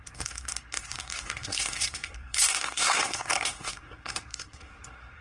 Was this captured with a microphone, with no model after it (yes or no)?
no